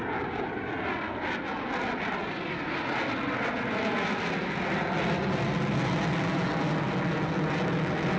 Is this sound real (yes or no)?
yes